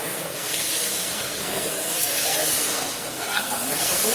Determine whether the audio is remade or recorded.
remade